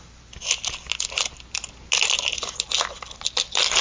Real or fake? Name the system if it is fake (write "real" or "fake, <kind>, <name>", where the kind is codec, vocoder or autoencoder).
real